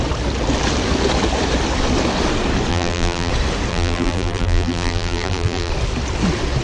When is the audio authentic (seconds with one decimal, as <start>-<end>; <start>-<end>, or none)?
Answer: 0.0-2.7; 3.3-3.7; 5.7-6.6